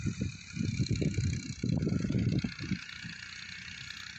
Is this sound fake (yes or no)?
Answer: no